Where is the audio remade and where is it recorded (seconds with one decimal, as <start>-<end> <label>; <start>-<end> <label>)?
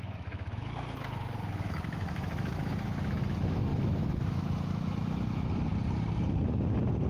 0.0-5.7 remade; 5.7-7.1 recorded